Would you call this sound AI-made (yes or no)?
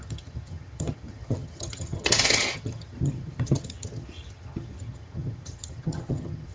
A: yes